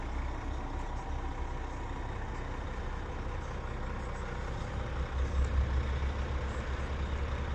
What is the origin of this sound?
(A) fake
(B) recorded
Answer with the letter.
B